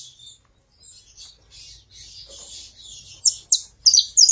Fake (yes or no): no